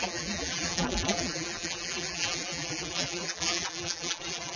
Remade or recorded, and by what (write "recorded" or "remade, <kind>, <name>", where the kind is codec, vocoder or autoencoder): remade, vocoder, BigVGAN v2